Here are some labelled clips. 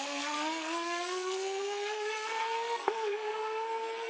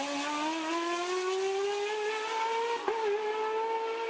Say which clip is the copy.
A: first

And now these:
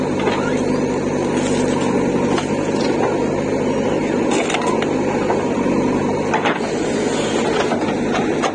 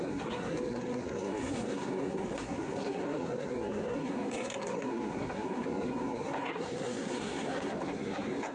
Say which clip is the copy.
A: second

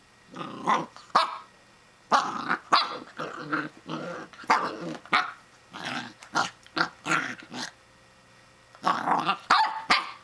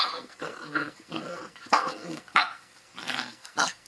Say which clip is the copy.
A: second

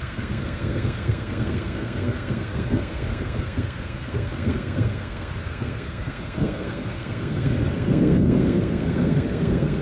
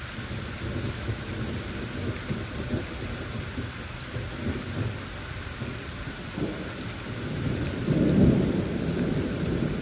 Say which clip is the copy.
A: first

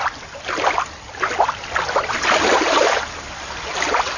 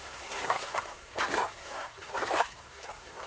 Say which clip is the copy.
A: second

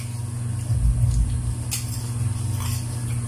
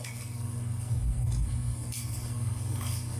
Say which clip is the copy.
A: second